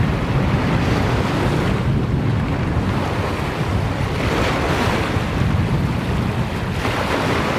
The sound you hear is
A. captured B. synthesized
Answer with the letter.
A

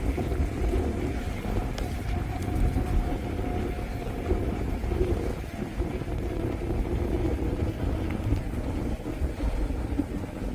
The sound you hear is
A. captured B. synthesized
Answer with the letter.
A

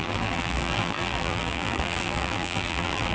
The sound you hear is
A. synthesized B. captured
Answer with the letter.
A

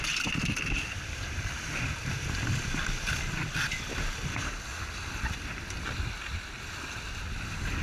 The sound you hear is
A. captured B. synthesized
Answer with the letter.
A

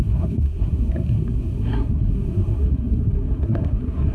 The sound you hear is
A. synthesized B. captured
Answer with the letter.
A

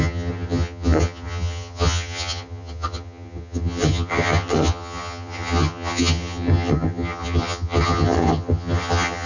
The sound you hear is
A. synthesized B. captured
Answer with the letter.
A